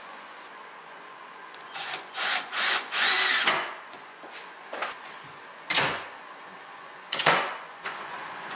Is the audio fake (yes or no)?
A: yes